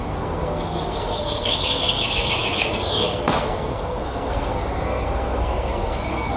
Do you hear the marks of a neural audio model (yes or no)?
yes